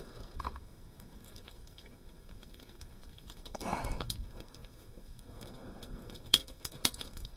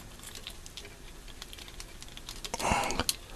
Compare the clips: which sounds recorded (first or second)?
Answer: second